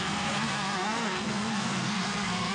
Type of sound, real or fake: fake